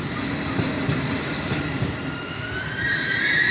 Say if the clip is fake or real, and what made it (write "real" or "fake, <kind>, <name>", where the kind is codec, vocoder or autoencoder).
real